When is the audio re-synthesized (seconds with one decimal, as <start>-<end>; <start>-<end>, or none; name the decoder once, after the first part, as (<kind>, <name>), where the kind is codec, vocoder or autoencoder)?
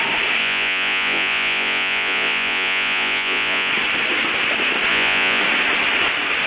0.4-3.7 (vocoder, Vocos); 4.9-5.4